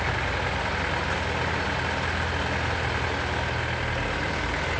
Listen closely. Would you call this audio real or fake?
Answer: real